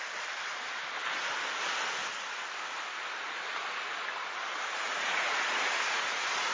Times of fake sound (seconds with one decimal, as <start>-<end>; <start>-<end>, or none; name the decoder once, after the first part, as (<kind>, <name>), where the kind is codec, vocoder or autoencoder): 4.8-6.5 (vocoder, Vocos)